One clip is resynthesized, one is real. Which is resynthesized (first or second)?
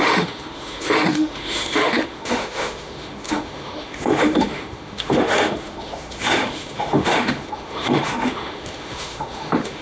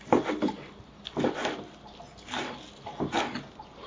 first